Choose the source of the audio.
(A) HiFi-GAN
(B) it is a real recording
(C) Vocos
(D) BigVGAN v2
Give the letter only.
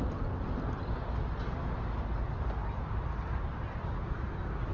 B